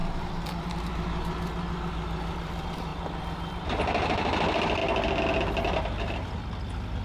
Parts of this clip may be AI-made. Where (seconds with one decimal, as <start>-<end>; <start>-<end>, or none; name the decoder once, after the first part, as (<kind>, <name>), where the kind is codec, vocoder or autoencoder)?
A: 0.0-0.9 (vocoder, BigVGAN v2)